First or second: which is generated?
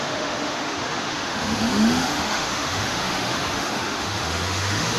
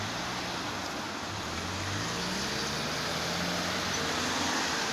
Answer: first